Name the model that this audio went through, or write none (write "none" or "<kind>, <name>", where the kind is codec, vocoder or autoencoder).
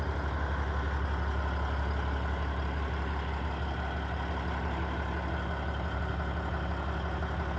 none